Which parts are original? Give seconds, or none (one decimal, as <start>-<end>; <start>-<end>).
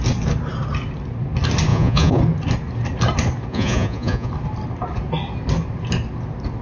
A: 0.0-1.7; 2.2-3.5; 4.3-6.6